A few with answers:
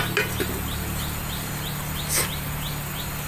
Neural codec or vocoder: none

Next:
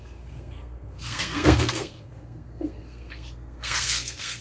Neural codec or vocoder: codec, SNAC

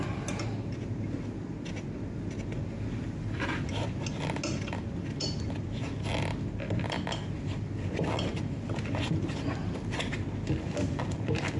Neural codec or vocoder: none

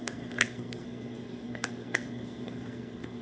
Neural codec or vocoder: codec, SNAC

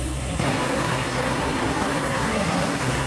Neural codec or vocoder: codec, SNAC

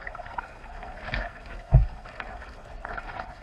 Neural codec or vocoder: codec, SNAC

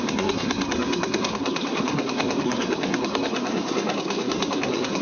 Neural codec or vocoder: codec, SNAC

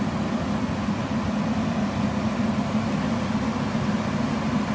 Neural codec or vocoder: none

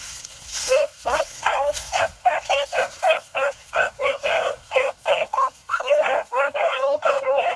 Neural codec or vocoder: codec, SNAC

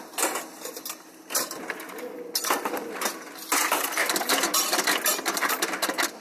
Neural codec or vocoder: none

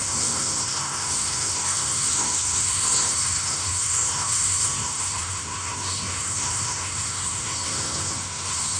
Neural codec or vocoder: codec, SNAC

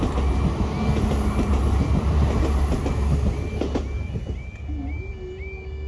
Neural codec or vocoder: none